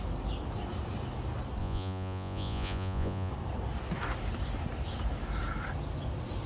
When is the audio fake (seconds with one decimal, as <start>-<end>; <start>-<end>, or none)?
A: 1.6-3.3

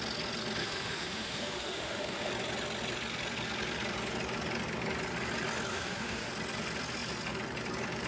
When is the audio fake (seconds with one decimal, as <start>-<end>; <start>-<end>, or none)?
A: 0.6-2.3; 5.7-6.3